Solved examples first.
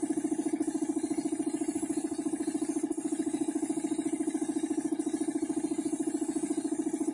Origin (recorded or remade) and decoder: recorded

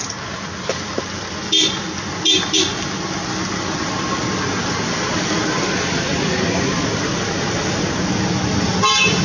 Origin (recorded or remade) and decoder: recorded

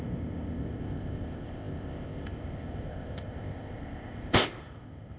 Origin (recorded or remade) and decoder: remade, codec, ZipCodec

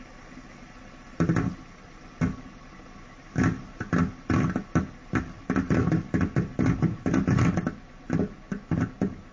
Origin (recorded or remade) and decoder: recorded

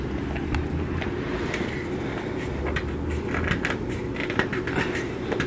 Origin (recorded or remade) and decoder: recorded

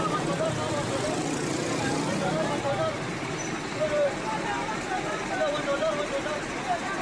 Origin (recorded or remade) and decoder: remade, vocoder, BigVGAN v2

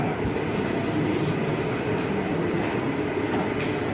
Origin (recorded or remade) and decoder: recorded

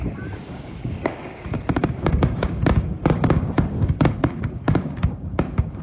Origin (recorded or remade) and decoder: remade, codec, DAC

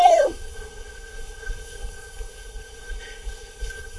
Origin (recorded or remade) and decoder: remade, codec, SNAC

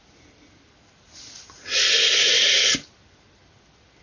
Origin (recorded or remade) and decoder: recorded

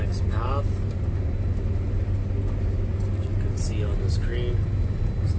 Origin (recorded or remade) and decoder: recorded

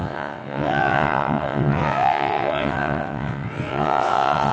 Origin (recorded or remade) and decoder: remade, vocoder, WaveNeXt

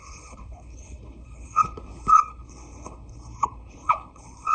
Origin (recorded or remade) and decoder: remade, codec, HILCodec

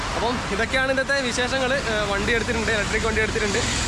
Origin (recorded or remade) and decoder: recorded